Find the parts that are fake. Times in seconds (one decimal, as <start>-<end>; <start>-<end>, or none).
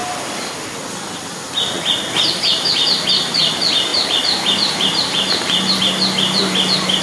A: 3.9-5.8